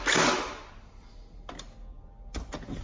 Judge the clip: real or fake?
real